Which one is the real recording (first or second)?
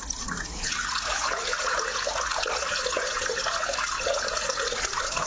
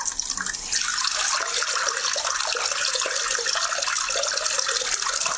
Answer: second